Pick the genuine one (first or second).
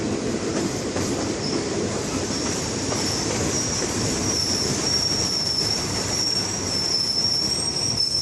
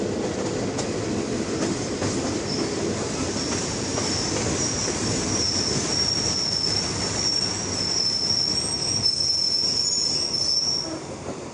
second